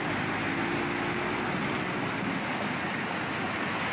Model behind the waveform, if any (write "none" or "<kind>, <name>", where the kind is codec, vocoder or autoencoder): none